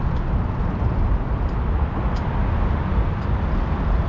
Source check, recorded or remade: recorded